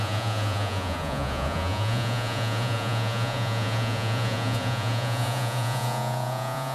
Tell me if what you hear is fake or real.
fake